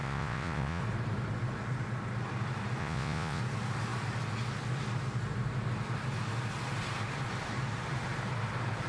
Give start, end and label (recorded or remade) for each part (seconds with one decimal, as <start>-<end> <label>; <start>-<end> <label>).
0.0-0.8 remade; 0.8-2.8 recorded; 2.8-3.4 remade; 3.4-8.9 recorded